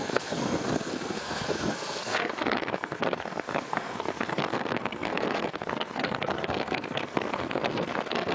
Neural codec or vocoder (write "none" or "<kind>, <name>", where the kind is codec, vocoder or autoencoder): codec, SNAC